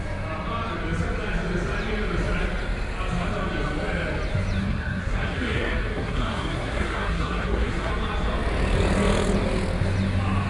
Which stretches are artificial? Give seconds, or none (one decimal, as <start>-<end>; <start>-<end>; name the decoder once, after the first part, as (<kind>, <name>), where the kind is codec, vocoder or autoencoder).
4.6-7.9 (codec, SNAC)